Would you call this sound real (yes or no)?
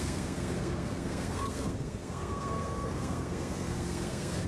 no